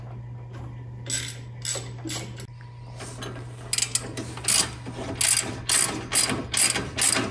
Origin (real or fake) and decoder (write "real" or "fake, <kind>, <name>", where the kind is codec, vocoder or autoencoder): real